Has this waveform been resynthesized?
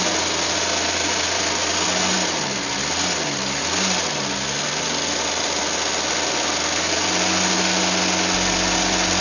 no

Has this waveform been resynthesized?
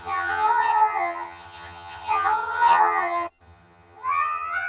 yes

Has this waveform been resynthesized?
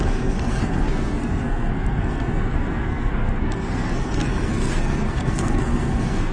yes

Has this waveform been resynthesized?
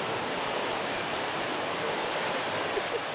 no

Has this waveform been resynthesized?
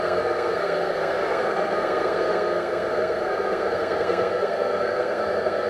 yes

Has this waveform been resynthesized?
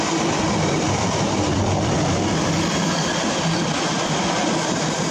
yes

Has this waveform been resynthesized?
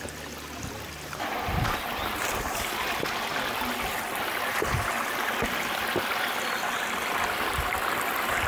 no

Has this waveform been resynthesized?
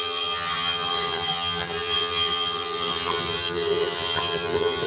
yes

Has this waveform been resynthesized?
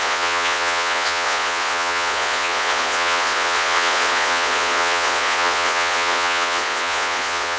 yes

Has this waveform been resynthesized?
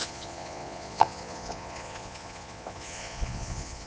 yes